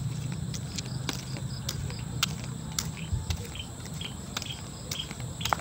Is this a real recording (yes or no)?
yes